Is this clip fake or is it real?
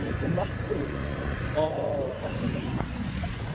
fake